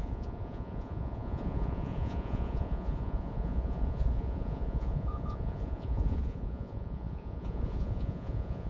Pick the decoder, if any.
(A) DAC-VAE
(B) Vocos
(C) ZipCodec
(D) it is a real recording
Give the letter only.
B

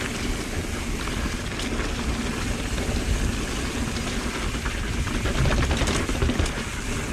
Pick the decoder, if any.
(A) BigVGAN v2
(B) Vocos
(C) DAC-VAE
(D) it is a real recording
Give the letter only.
D